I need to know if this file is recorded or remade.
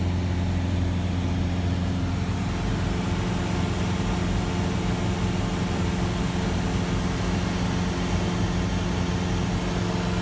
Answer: recorded